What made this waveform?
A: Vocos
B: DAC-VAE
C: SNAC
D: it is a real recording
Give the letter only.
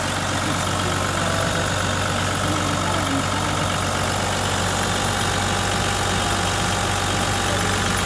D